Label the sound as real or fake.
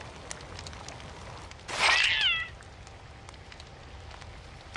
real